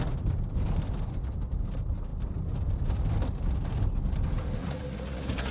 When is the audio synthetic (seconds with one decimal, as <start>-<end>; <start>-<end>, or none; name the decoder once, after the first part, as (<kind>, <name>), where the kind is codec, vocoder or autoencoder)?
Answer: 4.6-5.5 (vocoder, Vocos)